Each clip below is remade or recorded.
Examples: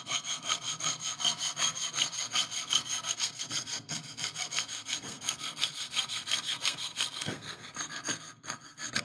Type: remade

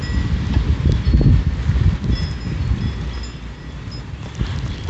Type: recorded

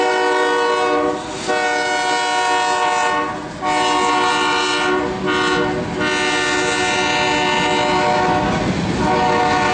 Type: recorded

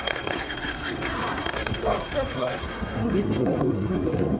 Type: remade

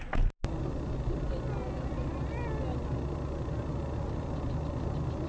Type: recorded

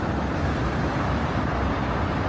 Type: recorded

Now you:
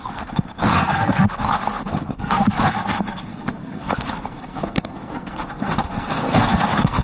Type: remade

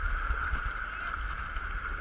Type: recorded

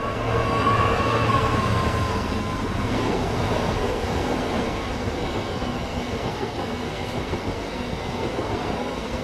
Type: remade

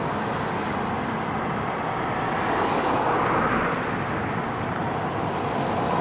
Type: recorded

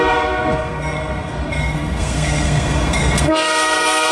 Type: remade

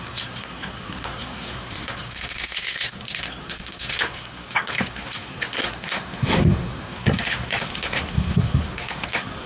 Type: remade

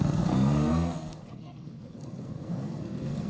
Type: remade